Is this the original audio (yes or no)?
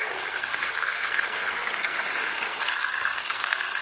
no